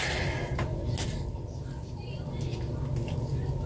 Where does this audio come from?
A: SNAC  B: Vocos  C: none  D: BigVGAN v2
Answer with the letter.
C